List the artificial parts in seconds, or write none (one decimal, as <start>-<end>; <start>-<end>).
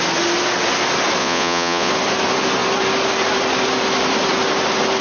1.2-1.9